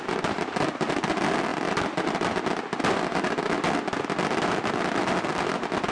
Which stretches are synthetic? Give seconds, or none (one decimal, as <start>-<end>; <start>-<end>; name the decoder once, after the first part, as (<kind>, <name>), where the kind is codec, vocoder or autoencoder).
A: none